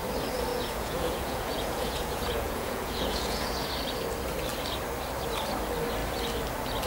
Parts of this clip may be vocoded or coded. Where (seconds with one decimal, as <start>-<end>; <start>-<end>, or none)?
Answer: 0.5-3.7